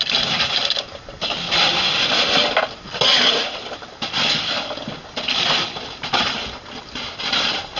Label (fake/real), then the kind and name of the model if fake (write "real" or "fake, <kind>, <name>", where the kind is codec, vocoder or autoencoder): real